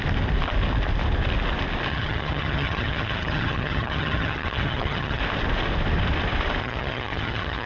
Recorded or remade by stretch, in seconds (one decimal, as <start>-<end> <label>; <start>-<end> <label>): 0.0-1.9 recorded; 1.9-5.2 remade; 5.2-6.6 recorded; 6.6-7.7 remade